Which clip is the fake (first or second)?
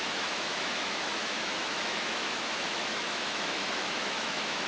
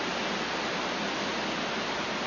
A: first